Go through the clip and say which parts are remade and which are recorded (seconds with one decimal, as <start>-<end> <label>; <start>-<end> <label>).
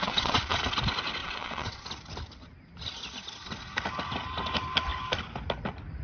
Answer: 0.0-0.6 remade; 0.6-1.2 recorded; 1.2-1.8 remade; 1.8-6.0 recorded